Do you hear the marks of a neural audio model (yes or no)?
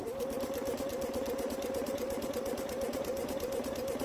no